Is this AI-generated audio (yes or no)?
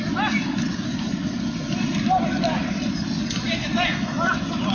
no